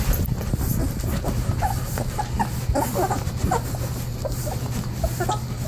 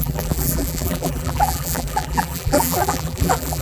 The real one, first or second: first